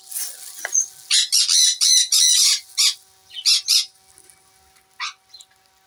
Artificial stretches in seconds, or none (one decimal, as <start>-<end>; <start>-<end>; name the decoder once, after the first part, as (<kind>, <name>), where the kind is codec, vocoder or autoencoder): none